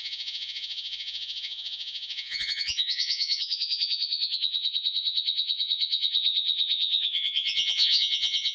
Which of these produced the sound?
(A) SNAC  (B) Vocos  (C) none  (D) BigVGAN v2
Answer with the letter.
B